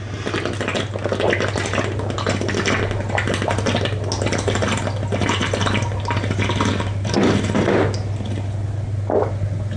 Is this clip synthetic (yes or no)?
no